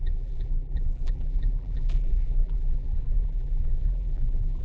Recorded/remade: remade